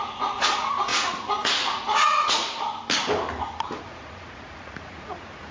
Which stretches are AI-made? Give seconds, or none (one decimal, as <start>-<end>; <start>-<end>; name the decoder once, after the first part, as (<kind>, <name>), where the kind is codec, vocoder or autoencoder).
0.0-2.4 (vocoder, Vocos); 3.8-5.5